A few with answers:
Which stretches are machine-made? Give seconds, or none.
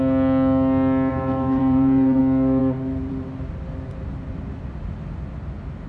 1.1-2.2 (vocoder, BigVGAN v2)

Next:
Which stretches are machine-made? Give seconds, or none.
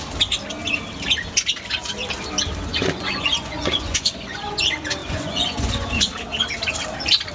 2.7-4.6 (vocoder, Vocos); 5.0-5.9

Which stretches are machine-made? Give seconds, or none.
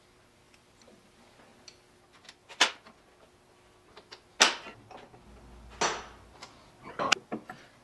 none